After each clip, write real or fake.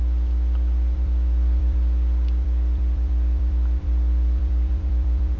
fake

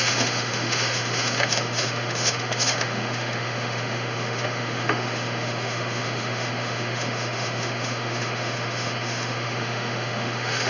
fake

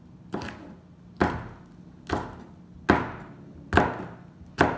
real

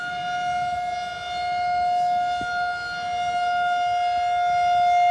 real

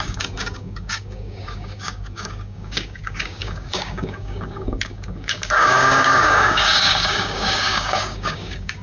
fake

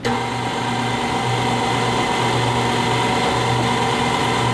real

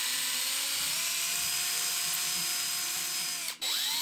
real